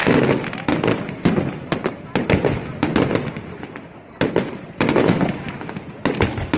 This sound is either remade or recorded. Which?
recorded